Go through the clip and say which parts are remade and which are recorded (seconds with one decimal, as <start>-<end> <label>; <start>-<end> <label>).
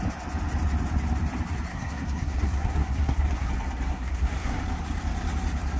0.0-1.7 recorded; 1.7-3.5 remade; 3.5-3.9 recorded; 3.9-4.6 remade; 4.6-5.8 recorded